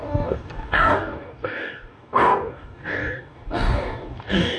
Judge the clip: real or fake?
fake